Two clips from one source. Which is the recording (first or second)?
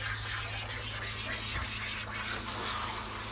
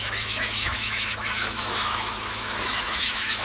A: first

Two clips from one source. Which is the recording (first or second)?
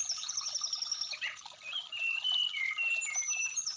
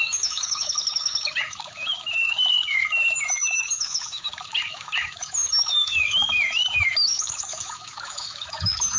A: first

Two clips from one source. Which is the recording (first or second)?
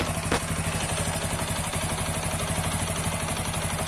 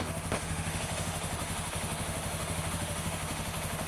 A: first